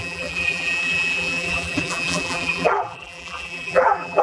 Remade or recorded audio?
remade